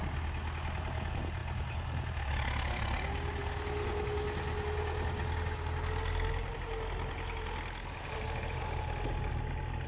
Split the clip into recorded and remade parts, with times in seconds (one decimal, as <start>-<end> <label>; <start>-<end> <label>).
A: 0.0-9.9 recorded